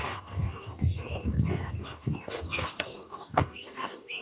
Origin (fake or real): fake